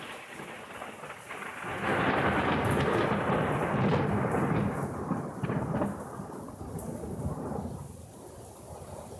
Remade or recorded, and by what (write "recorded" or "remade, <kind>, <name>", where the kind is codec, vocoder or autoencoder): recorded